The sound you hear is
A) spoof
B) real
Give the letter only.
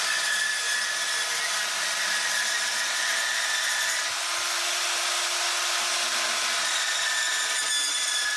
B